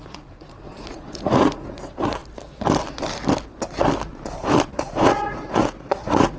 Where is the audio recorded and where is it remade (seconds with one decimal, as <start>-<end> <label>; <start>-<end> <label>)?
0.0-2.2 remade; 2.2-4.7 recorded; 4.7-6.4 remade